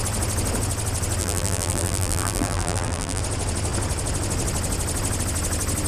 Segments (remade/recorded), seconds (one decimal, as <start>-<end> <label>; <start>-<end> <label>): 0.0-1.2 recorded; 1.2-3.2 remade; 3.2-5.9 recorded